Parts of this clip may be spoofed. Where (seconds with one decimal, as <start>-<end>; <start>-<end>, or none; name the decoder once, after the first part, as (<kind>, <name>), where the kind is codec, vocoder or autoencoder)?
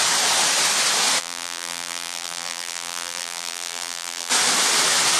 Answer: 1.2-4.3 (vocoder, BigVGAN v2)